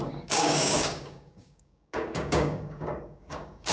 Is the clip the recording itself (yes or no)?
no